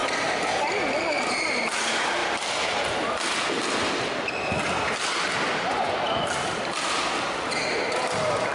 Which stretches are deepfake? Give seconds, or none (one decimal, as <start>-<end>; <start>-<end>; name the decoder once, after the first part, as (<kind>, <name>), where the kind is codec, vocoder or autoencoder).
none